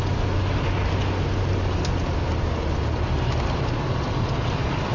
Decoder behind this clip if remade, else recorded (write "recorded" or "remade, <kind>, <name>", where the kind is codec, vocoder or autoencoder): recorded